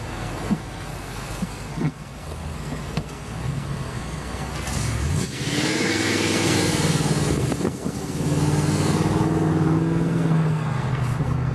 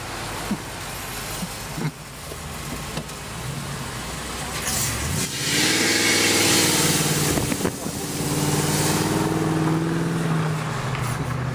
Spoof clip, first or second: first